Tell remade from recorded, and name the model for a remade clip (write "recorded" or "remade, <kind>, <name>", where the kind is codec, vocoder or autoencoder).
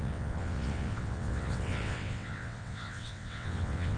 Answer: remade, vocoder, WaveNeXt